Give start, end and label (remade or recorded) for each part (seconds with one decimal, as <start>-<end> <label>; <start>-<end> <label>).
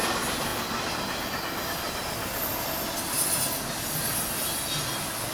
0.0-5.3 recorded